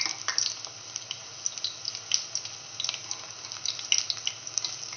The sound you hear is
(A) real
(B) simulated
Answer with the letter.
A